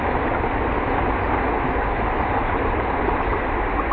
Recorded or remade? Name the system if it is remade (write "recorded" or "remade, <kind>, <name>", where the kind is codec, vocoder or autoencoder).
recorded